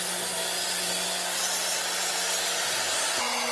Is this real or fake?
real